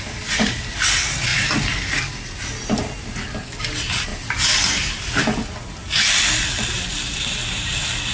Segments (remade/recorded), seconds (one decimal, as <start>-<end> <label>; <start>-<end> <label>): 0.0-8.1 recorded